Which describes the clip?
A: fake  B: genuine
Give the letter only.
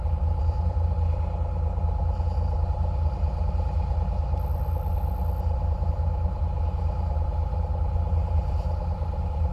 B